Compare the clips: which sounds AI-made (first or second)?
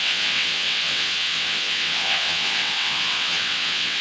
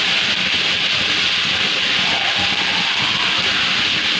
first